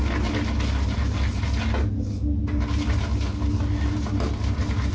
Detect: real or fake real